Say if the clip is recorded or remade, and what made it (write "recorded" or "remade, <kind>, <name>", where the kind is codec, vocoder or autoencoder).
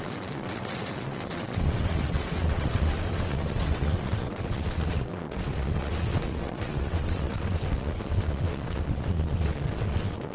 remade, vocoder, WaveNeXt